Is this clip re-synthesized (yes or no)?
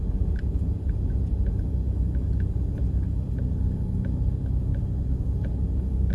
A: no